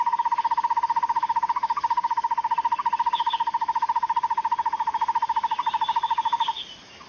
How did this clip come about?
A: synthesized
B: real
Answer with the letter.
B